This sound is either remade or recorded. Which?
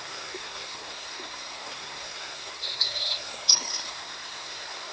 remade